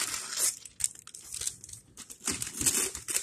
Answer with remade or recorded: recorded